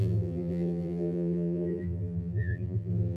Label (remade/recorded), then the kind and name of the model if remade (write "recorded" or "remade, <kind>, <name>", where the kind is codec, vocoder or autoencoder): remade, vocoder, BigVGAN v2